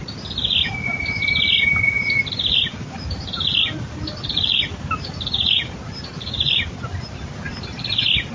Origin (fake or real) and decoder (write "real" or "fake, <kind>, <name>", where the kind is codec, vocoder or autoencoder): real